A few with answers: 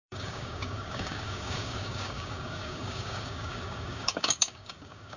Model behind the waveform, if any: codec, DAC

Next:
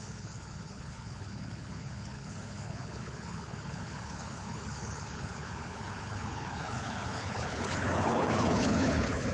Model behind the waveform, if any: codec, HILCodec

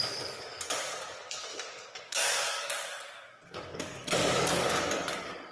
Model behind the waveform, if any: codec, DAC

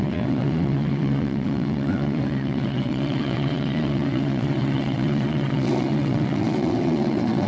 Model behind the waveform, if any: vocoder, WaveNeXt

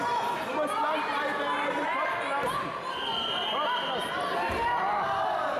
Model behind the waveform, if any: none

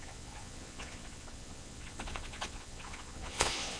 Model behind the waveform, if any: vocoder, Vocos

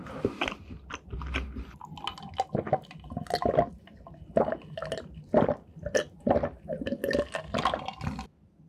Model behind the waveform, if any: none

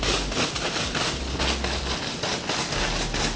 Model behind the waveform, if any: none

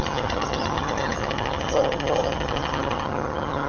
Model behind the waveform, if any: vocoder, HiFi-GAN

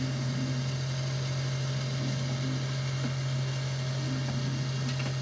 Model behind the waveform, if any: none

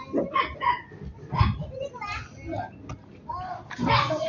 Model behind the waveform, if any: none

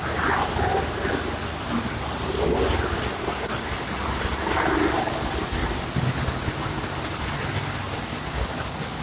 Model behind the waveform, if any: none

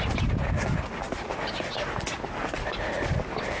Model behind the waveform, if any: none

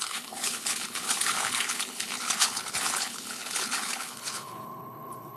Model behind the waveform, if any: codec, HILCodec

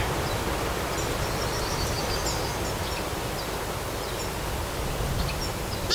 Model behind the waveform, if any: none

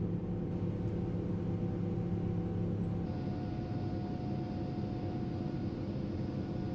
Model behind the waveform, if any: none